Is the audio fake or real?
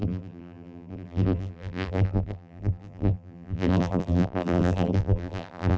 fake